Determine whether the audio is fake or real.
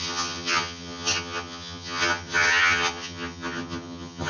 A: fake